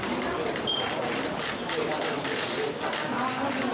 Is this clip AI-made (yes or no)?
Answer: yes